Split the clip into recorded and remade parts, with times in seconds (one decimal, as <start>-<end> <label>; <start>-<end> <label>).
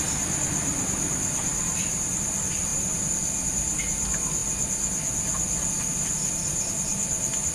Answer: 0.0-7.5 recorded